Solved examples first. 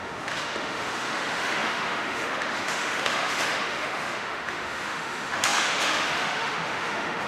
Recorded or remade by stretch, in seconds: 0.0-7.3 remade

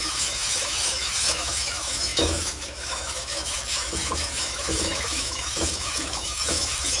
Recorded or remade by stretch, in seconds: 0.0-7.0 remade

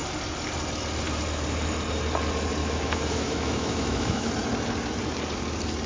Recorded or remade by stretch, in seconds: 0.0-2.6 recorded; 2.6-4.3 remade; 4.3-5.9 recorded

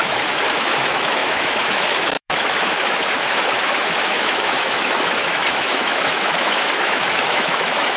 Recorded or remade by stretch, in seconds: 0.0-8.0 remade

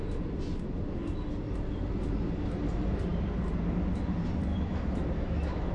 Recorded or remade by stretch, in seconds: 0.0-4.5 recorded; 4.5-5.7 remade